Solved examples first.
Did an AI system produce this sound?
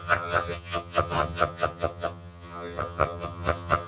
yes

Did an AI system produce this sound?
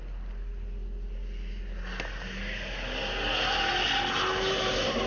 no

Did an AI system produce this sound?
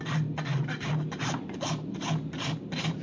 no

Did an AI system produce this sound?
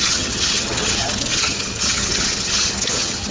yes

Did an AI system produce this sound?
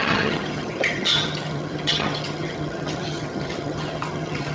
yes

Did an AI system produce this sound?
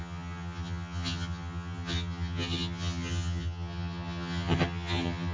yes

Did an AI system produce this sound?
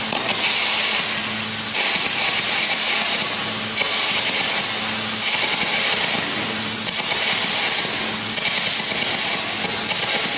no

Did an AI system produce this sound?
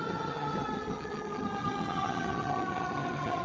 yes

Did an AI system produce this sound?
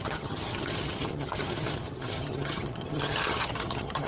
yes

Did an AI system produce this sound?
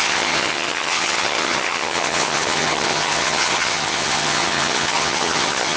yes